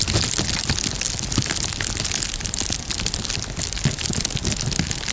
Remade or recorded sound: recorded